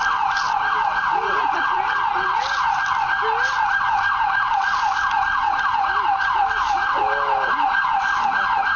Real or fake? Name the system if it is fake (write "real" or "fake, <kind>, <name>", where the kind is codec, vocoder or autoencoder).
real